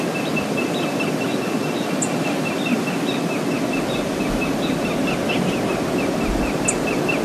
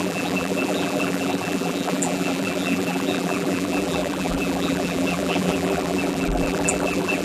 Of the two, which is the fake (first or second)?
second